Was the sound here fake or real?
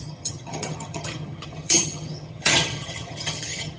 fake